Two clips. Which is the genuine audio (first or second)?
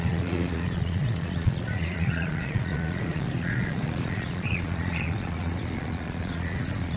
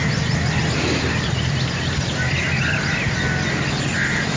second